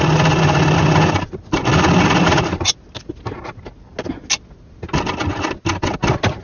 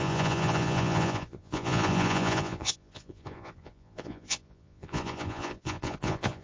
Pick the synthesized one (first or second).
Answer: second